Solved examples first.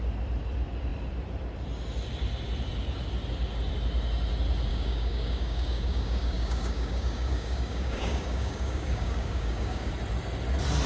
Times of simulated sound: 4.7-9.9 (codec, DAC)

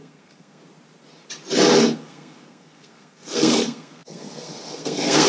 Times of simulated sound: 0.0-0.6 (codec, SNAC); 1.8-5.3

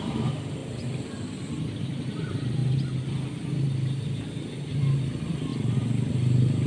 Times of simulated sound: 0.0-0.6 (vocoder, BigVGAN v2); 1.5-2.6; 4.0-5.5

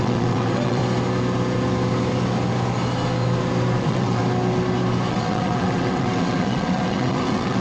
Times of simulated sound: 0.0-0.8 (vocoder, WaveNeXt); 3.8-4.2; 5.1-7.6

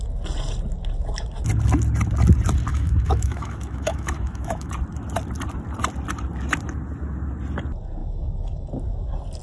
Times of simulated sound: 2.7-4.7 (autoencoder, DAC-VAE); 8.0-8.7

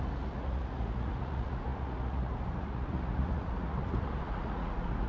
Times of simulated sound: 0.0-5.1 (vocoder, Vocos)

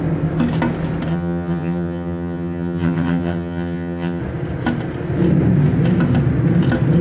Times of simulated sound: 1.1-4.2 (vocoder, HiFi-GAN)

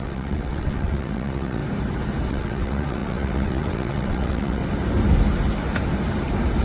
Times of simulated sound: 0.0-1.6 (vocoder, WaveNeXt); 2.3-4.6